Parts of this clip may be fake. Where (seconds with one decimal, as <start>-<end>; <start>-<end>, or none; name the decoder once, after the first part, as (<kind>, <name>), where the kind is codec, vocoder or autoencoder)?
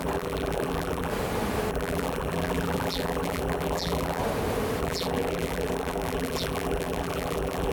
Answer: 0.0-1.1 (vocoder, BigVGAN v2); 1.7-4.2; 4.8-7.7